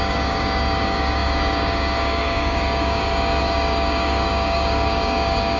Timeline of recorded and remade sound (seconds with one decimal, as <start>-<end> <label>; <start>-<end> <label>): 0.0-5.6 remade